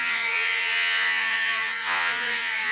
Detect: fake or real fake